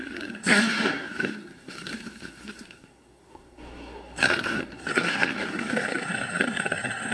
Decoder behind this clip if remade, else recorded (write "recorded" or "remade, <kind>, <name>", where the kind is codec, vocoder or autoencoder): remade, codec, SNAC